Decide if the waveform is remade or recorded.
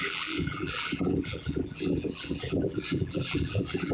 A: remade